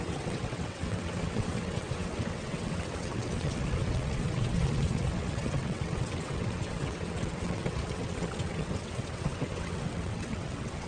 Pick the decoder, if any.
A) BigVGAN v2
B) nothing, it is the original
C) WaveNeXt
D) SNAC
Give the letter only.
C